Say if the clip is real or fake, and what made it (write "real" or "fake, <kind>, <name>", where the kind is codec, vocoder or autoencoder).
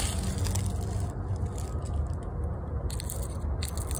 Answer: real